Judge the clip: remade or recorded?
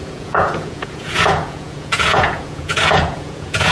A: remade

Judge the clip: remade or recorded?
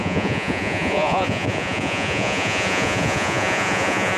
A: remade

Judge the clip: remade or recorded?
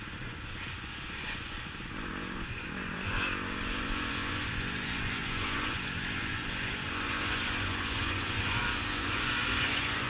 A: remade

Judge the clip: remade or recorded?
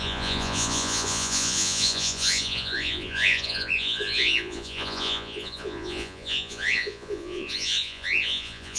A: remade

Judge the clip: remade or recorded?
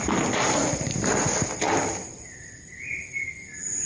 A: recorded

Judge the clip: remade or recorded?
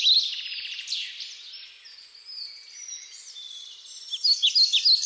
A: recorded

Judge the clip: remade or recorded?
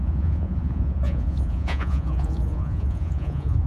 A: remade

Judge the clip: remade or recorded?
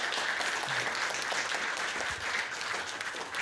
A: recorded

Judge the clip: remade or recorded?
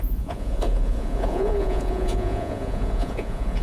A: remade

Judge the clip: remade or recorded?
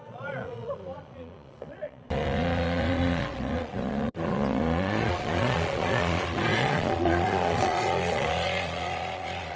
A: remade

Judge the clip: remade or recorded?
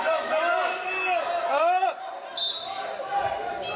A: recorded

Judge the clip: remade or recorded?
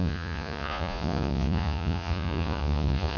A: remade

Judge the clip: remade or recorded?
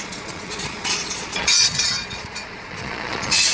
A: remade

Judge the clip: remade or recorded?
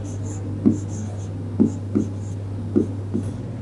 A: recorded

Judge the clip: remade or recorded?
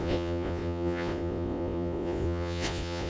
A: remade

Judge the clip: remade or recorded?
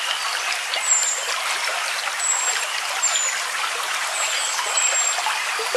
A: recorded